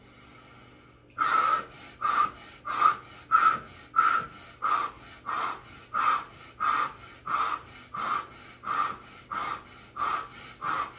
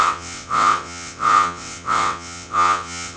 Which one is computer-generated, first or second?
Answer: second